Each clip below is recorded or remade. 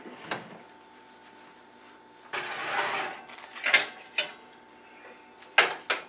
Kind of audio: recorded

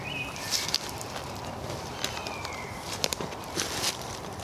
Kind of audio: remade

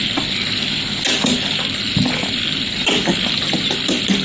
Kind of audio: recorded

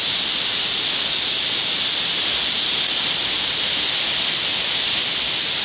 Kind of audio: recorded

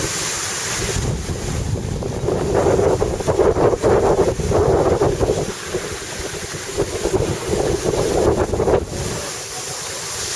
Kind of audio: recorded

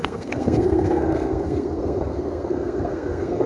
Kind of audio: remade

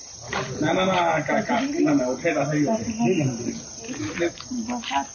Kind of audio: recorded